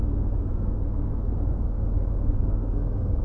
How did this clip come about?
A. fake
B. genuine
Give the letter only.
A